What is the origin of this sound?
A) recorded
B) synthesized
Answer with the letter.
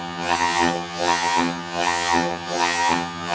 B